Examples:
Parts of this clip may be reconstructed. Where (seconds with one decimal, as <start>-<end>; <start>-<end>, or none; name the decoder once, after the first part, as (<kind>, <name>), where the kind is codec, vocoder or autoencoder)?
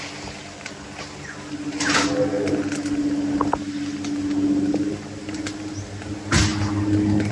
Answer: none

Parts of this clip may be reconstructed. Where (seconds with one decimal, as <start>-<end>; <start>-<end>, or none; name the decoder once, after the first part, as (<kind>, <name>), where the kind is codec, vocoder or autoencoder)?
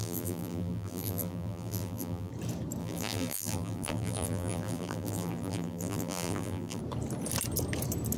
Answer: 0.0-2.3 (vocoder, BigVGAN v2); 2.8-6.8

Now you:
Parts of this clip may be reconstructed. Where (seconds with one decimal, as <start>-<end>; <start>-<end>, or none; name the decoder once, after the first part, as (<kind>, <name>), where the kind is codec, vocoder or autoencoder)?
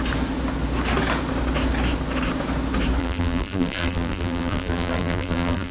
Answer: 3.0-5.7 (vocoder, BigVGAN v2)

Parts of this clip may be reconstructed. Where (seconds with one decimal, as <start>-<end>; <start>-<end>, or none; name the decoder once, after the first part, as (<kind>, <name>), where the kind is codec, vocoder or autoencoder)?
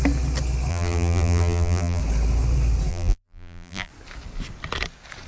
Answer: 0.7-2.0 (vocoder, BigVGAN v2); 2.9-3.9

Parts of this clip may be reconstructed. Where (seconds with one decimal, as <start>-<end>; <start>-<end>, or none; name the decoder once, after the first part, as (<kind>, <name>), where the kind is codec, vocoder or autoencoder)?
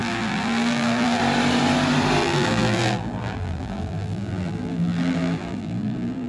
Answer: 0.0-1.2 (vocoder, BigVGAN v2); 2.2-6.3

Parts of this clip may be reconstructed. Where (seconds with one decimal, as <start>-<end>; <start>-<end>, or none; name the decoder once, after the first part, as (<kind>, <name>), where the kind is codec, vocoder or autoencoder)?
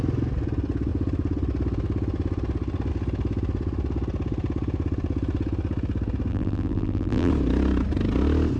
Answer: 6.3-7.3 (vocoder, BigVGAN v2)